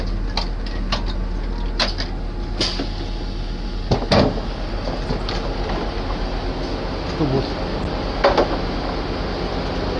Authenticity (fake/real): real